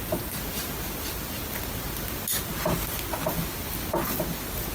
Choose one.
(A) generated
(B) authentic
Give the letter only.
B